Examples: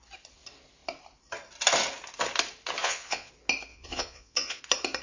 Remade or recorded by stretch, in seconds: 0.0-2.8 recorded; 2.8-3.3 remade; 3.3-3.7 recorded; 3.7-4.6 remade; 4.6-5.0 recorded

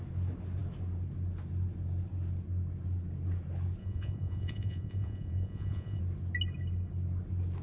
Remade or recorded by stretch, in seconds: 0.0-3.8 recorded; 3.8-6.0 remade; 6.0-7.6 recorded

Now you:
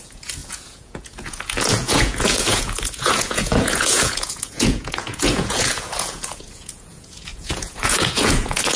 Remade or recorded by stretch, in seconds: 0.0-8.8 remade